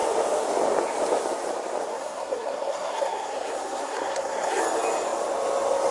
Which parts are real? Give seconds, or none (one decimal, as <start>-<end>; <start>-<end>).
0.0-1.9; 4.6-5.9